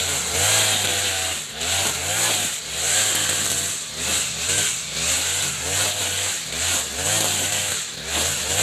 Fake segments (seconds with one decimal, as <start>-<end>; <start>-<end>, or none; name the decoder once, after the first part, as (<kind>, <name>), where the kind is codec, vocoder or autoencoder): none